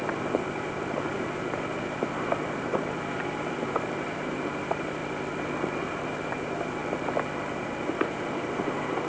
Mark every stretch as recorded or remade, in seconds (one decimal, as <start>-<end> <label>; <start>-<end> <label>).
0.0-5.0 remade; 5.0-5.9 recorded; 5.9-6.8 remade; 6.8-7.6 recorded; 7.6-9.1 remade